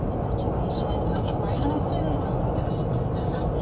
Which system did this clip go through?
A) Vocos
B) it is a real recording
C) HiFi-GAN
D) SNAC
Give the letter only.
B